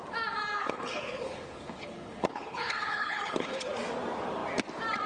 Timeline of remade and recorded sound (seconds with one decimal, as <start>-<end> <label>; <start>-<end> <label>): 0.0-0.6 recorded; 0.6-3.7 remade; 3.7-5.1 recorded

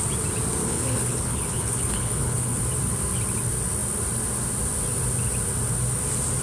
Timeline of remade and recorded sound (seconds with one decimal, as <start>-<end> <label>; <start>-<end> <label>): 0.0-0.6 recorded; 0.6-2.6 remade; 2.6-6.4 recorded

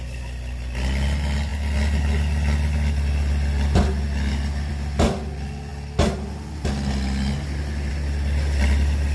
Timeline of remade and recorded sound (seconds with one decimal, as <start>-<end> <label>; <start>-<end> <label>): 0.0-9.1 recorded

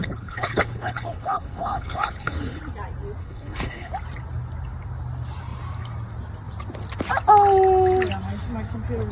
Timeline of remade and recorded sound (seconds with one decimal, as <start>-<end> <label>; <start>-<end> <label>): 0.0-2.6 remade; 2.6-3.2 recorded; 3.2-3.9 remade; 3.9-9.1 recorded